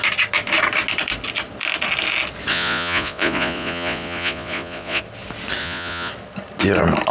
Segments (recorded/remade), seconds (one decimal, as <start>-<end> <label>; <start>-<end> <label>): 0.0-2.5 recorded; 2.5-5.0 remade; 5.0-5.6 recorded; 5.6-6.1 remade; 6.1-7.1 recorded